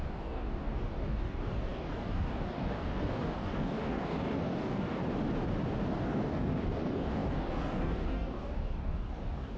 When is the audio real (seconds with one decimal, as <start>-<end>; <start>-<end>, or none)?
5.0-5.9